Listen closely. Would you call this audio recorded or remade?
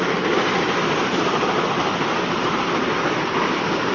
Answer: recorded